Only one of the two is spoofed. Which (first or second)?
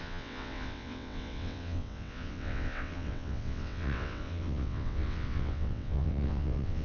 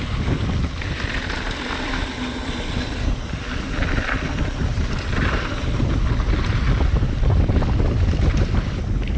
first